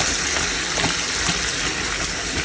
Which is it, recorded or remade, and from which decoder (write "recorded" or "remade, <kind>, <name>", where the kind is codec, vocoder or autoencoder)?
recorded